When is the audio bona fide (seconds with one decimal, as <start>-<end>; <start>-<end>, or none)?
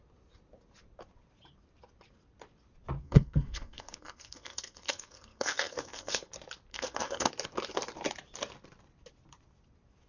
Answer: 0.0-3.0; 6.3-6.7; 7.3-10.1